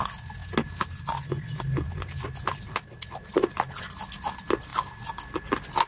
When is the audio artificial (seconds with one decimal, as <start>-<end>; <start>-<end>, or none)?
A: none